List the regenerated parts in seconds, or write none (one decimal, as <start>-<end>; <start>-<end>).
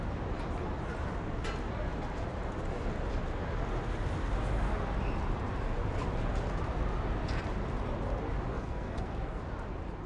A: 8.5-9.4